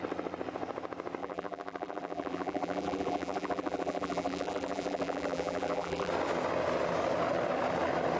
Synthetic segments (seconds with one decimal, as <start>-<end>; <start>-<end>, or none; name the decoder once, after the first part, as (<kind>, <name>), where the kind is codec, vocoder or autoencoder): 1.2-6.1 (vocoder, BigVGAN v2)